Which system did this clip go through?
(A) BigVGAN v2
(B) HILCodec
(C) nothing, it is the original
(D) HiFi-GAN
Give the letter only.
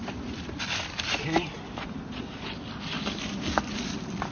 A